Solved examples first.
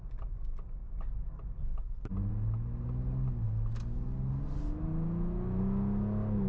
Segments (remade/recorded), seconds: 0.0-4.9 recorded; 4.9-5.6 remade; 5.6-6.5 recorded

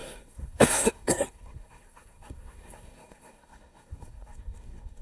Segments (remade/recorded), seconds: 0.0-5.0 remade

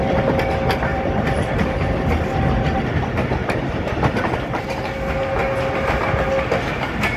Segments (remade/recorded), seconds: 0.0-0.9 recorded; 0.9-2.8 remade; 2.8-3.4 recorded; 3.4-4.1 remade; 4.1-7.2 recorded

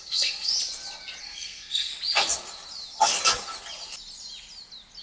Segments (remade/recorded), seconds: 0.0-0.5 remade; 0.5-1.2 recorded; 1.2-1.9 remade; 1.9-5.0 recorded

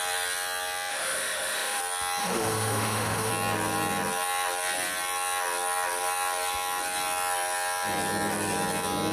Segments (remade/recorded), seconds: 0.0-0.9 recorded; 0.9-1.8 remade; 1.8-2.2 recorded; 2.2-3.3 remade; 3.3-9.1 recorded

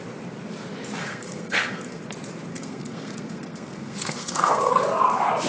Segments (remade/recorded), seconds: 0.0-1.0 recorded; 1.0-2.0 remade; 2.0-2.5 recorded; 2.5-4.7 remade; 4.7-5.5 recorded

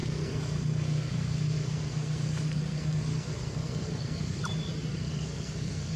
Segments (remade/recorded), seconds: 0.0-4.4 remade; 4.4-4.9 recorded; 4.9-6.0 remade

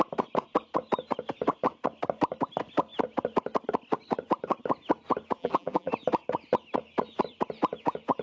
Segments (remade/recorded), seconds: 0.0-5.4 recorded; 5.4-5.9 remade; 5.9-8.2 recorded